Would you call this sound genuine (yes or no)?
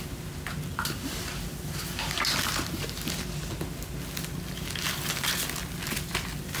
yes